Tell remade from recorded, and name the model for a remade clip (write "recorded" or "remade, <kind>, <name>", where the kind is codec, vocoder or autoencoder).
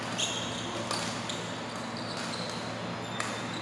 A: recorded